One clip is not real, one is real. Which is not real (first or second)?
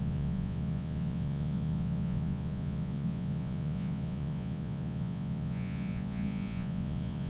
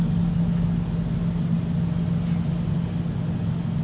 first